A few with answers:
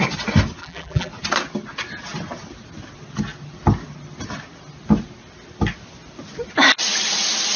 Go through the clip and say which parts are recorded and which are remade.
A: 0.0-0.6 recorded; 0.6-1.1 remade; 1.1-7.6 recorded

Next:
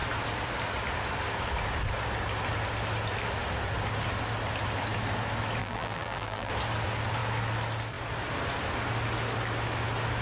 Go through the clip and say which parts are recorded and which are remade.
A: 0.0-5.6 recorded; 5.6-6.5 remade; 6.5-10.2 recorded

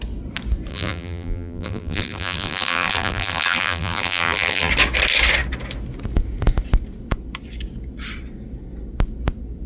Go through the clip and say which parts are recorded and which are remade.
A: 0.0-0.7 recorded; 0.7-4.7 remade; 4.7-9.7 recorded

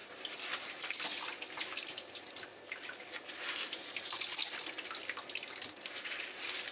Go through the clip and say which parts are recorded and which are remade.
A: 0.0-6.7 recorded

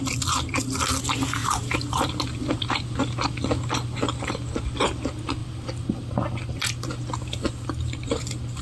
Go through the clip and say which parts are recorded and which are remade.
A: 0.0-1.4 recorded; 1.4-2.1 remade; 2.1-8.6 recorded

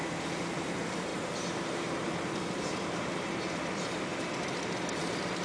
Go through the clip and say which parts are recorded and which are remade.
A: 0.0-0.6 recorded; 0.6-4.1 remade; 4.1-4.8 recorded; 4.8-5.4 remade

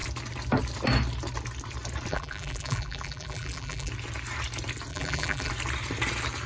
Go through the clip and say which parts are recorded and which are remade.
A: 0.0-2.1 recorded; 2.1-3.9 remade; 3.9-4.9 recorded; 4.9-5.5 remade; 5.5-6.5 recorded